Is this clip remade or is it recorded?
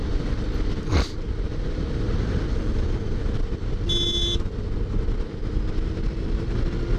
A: recorded